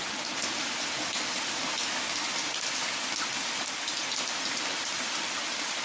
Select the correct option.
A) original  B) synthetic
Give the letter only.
A